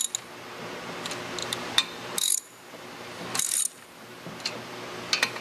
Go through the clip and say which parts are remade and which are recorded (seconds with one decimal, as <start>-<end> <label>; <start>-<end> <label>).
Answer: 0.0-1.4 recorded; 1.4-4.3 remade; 4.3-5.4 recorded